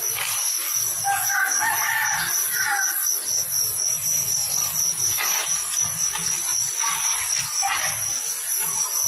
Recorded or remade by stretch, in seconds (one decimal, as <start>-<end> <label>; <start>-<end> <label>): 0.0-9.1 recorded